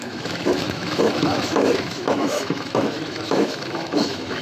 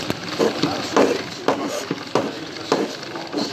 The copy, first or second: first